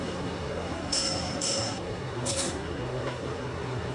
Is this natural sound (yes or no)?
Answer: no